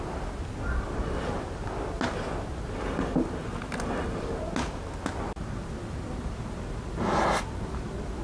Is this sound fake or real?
real